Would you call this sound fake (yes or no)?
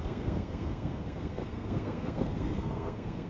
yes